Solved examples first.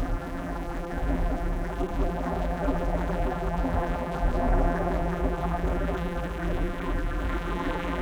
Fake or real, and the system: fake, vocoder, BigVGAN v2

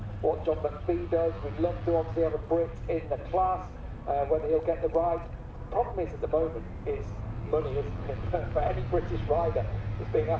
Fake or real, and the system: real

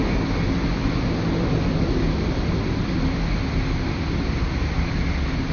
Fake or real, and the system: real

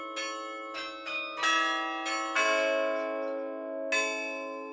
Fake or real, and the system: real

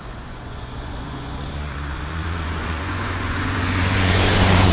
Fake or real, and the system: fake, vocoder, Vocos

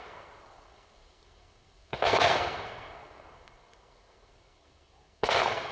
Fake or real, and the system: fake, codec, SNAC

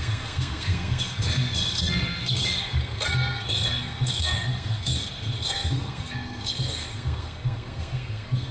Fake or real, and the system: fake, codec, SNAC